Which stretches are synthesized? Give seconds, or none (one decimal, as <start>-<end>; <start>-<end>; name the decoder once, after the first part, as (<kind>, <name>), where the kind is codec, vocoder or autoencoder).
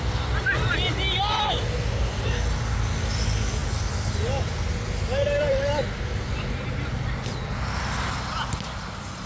none